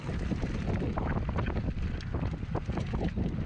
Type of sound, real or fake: real